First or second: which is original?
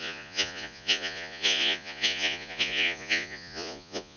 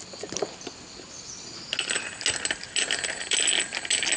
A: second